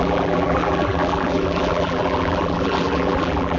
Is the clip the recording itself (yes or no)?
no